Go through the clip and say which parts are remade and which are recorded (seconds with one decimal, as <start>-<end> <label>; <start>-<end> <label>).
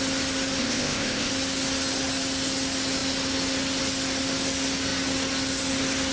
0.0-0.6 recorded; 0.6-1.3 remade; 1.3-6.1 recorded